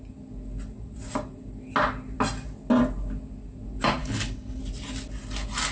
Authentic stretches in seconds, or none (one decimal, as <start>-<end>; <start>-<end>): 0.0-4.0; 4.6-5.7